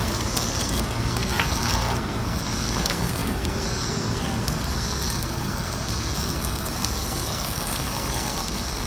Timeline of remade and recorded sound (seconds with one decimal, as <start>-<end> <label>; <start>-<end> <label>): 0.0-8.9 remade